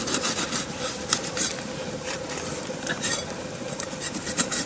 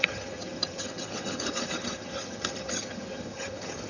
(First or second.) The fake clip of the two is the second